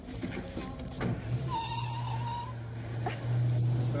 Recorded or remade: recorded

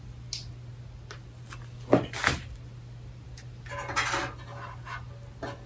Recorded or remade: recorded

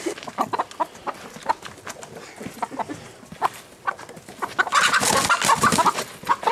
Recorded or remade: recorded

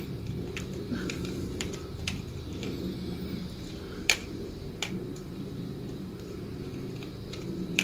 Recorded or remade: remade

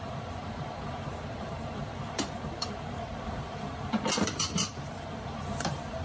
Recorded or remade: remade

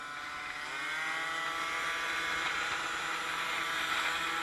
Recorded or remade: recorded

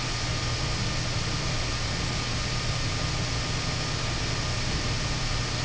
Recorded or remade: recorded